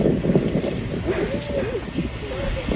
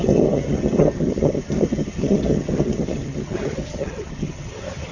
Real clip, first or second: first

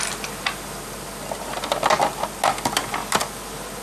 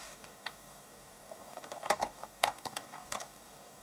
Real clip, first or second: first